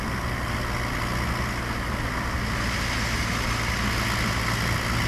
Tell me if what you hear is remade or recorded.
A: recorded